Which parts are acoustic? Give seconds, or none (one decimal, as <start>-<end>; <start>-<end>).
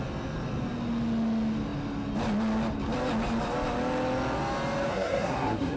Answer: 0.0-4.9